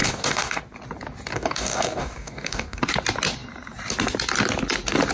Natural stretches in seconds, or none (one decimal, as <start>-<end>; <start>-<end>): 0.6-1.3; 2.8-5.1